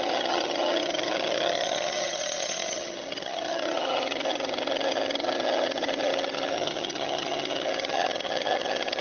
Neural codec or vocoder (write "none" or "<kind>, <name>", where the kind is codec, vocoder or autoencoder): vocoder, HiFi-GAN